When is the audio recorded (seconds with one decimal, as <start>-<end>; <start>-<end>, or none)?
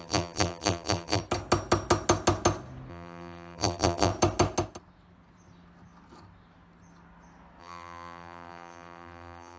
1.2-2.9; 4.1-7.6